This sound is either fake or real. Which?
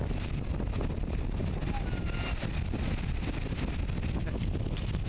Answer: real